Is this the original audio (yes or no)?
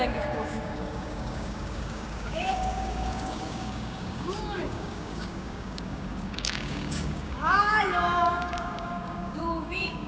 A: no